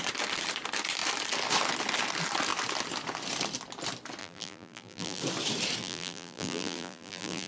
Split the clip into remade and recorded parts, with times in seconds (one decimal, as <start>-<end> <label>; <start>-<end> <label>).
0.0-4.2 recorded; 4.2-5.2 remade; 5.2-5.8 recorded; 5.8-7.5 remade